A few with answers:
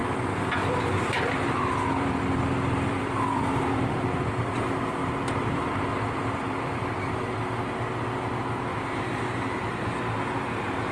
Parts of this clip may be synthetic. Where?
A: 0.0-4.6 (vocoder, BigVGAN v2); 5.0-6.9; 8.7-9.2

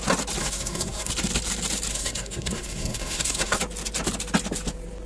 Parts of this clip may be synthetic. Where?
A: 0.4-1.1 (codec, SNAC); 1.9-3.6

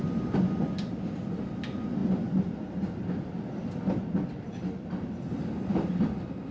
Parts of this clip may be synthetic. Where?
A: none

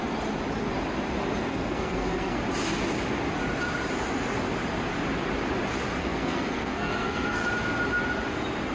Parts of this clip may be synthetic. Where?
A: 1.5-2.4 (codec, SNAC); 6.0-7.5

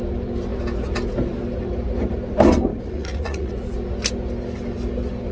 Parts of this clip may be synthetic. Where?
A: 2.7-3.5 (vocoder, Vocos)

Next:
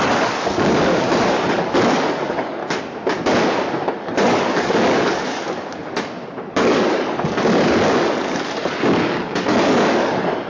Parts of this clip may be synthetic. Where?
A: 0.0-2.6 (codec, DAC); 4.0-5.4; 6.5-10.5